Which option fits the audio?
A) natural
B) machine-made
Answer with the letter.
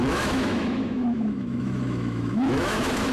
B